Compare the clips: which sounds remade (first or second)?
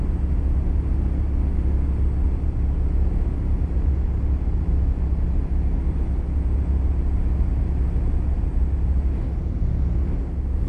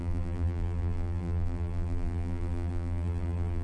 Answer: second